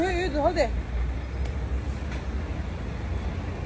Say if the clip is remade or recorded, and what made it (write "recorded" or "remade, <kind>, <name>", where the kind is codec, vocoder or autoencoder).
recorded